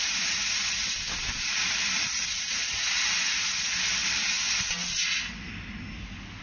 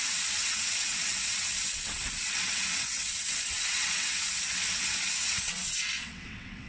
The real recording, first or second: first